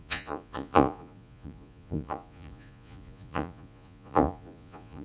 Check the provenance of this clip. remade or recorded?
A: remade